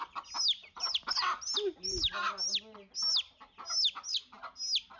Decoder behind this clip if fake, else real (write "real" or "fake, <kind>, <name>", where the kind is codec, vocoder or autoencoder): real